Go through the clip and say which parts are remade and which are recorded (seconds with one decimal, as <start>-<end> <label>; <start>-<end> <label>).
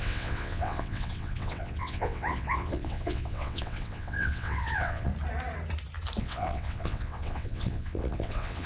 0.0-5.1 remade; 5.1-6.2 recorded; 6.2-8.7 remade